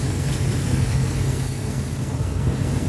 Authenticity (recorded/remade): remade